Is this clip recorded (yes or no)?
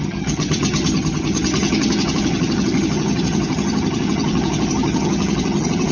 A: no